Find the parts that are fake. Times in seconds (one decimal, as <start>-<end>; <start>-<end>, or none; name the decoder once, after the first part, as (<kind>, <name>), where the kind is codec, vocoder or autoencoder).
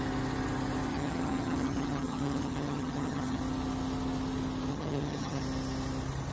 0.9-3.4 (vocoder, HiFi-GAN); 4.7-5.4